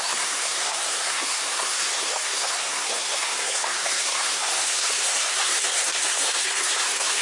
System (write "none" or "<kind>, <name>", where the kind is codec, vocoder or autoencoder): codec, SNAC